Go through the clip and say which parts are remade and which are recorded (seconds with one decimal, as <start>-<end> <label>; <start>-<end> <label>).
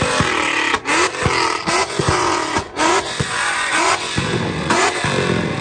0.0-1.8 recorded; 1.8-5.0 remade; 5.0-5.6 recorded